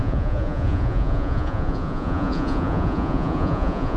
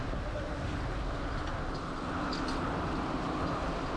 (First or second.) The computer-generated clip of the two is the first